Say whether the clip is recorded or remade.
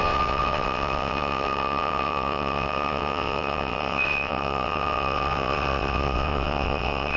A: remade